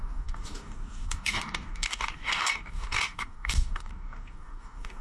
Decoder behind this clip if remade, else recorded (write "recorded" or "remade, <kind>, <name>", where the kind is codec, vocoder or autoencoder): remade, codec, DAC